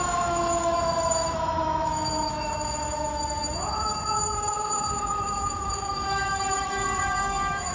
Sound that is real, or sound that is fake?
fake